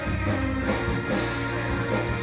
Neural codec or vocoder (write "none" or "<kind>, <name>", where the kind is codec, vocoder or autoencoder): none